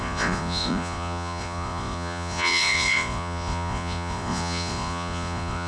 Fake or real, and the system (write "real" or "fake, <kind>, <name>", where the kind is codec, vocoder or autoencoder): fake, vocoder, Vocos